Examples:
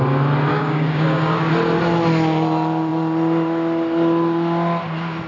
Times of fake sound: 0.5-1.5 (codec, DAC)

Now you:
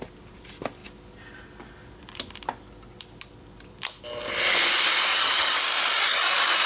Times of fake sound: 5.1-5.6 (vocoder, HiFi-GAN)

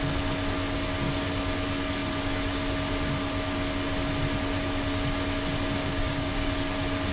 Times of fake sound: 5.8-6.5 (codec, DAC)

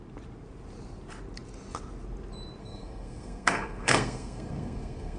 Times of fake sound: 2.6-5.2 (codec, SNAC)

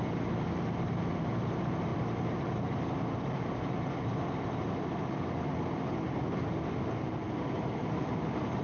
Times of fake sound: none

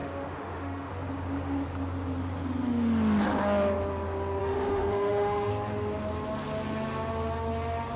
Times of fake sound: 0.0-0.9 (autoencoder, DAC-VAE); 4.4-5.5

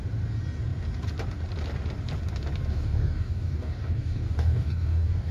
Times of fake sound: 2.7-5.3 (codec, DAC)

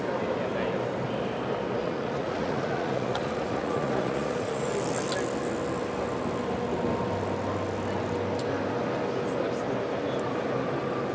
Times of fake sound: 1.8-4.7 (vocoder, Vocos)